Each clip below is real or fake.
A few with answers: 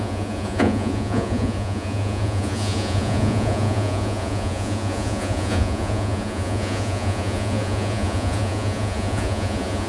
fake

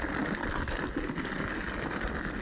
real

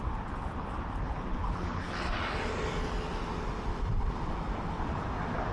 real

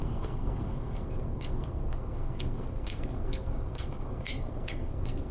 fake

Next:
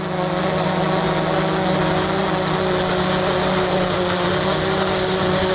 real